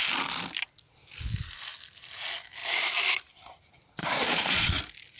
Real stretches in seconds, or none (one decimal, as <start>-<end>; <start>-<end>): 0.0-4.0; 4.8-5.2